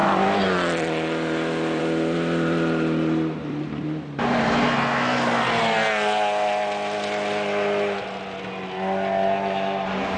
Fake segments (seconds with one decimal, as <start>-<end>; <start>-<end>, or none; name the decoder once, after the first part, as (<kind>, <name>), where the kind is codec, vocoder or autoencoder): none